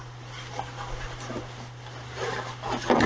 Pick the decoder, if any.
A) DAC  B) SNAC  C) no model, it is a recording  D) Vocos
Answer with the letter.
C